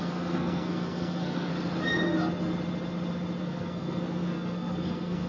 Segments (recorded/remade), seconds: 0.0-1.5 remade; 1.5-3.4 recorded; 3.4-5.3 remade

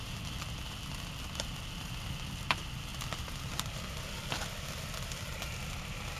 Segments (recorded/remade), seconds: 0.0-6.2 recorded